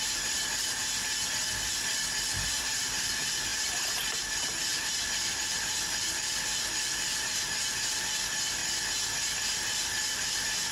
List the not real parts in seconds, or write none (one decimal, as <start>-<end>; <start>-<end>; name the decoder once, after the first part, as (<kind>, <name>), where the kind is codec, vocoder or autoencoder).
0.0-0.8 (vocoder, BigVGAN v2); 2.6-8.6; 9.2-10.7